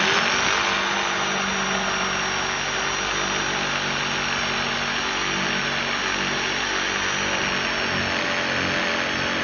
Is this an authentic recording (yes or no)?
yes